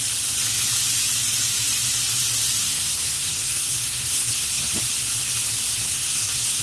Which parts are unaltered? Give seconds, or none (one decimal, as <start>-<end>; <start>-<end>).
0.0-2.6; 4.7-5.8